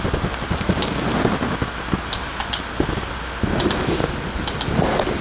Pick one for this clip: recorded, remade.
recorded